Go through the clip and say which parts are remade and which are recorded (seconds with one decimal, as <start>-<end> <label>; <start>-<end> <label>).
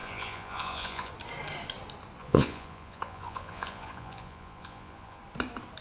0.0-1.1 remade; 1.1-2.2 recorded; 2.2-5.2 remade; 5.2-5.8 recorded